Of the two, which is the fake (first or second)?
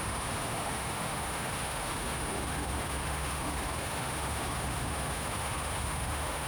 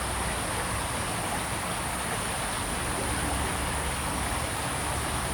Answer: first